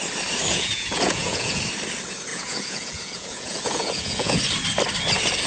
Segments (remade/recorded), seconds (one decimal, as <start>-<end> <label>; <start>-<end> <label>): 0.0-0.5 recorded; 0.5-1.6 remade; 1.6-2.3 recorded; 2.3-4.4 remade; 4.4-5.5 recorded

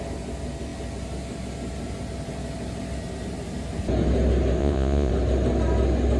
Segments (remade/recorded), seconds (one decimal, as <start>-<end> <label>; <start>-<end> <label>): 0.0-4.6 recorded; 4.6-5.1 remade; 5.1-6.2 recorded

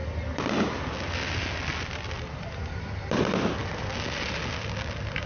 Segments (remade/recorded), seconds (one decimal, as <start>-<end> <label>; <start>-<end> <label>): 0.0-3.6 recorded; 3.6-4.4 remade; 4.4-5.3 recorded

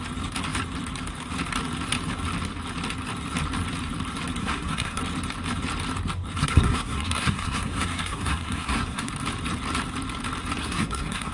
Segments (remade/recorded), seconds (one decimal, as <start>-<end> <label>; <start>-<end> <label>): 0.0-4.4 recorded; 4.4-5.0 remade; 5.0-6.4 recorded; 6.4-9.1 remade; 9.1-10.6 recorded; 10.6-11.3 remade

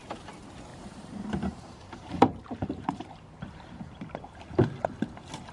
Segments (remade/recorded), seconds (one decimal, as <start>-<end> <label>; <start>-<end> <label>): 0.0-0.7 recorded; 0.7-4.0 remade; 4.0-5.5 recorded

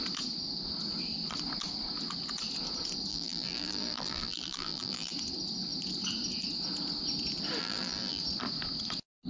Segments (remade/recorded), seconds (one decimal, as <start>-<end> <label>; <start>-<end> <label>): 0.0-3.1 recorded; 3.1-5.1 remade; 5.1-7.6 recorded; 7.6-8.2 remade; 8.2-9.3 recorded

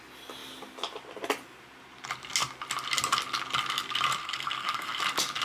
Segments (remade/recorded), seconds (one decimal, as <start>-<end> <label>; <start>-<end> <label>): 0.0-4.2 recorded; 4.2-5.0 remade; 5.0-5.4 recorded